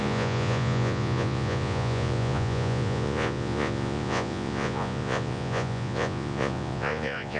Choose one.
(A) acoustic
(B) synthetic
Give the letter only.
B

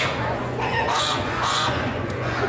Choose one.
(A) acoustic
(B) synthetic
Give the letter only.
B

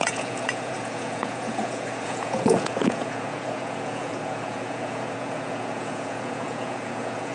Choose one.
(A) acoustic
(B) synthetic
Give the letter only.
B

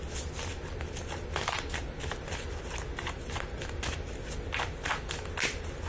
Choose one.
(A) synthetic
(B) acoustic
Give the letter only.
B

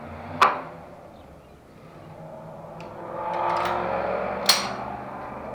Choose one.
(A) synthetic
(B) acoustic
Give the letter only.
B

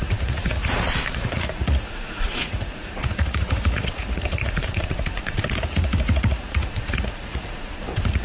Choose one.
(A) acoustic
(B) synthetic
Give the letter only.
B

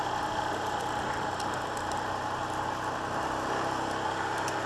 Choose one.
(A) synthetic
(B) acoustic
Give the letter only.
B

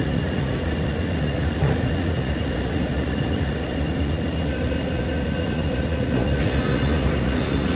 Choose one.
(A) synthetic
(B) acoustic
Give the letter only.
A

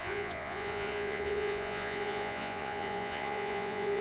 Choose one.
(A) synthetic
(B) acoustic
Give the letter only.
A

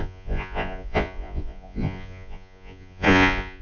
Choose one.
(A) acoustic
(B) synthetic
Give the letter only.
B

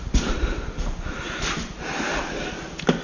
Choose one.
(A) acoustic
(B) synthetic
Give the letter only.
A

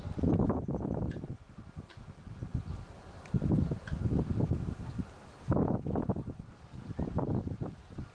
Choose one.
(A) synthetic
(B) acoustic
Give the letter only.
B